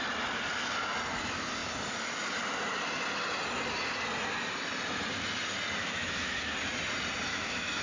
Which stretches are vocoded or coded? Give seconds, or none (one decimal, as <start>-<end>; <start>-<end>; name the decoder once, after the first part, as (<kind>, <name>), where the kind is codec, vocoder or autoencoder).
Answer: 5.8-6.5 (autoencoder, DAC-VAE); 7.3-7.8